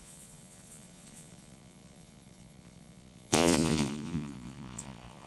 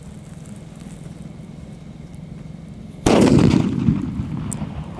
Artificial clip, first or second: first